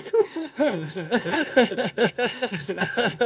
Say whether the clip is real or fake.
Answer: fake